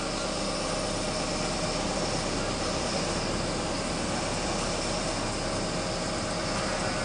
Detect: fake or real real